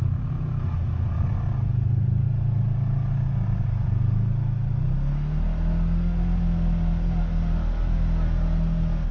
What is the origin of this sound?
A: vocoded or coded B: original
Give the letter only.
B